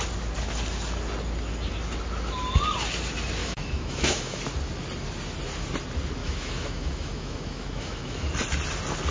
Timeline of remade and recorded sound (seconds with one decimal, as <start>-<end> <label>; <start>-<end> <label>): 0.0-3.4 recorded; 3.4-4.4 remade; 4.4-6.2 recorded; 6.2-8.3 remade; 8.3-9.1 recorded